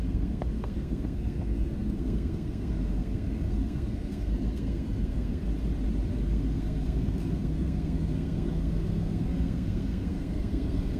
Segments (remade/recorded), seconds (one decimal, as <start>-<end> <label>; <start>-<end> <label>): 0.0-5.5 remade; 5.5-6.1 recorded; 6.1-11.0 remade